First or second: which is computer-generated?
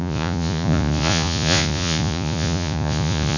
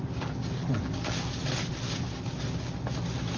first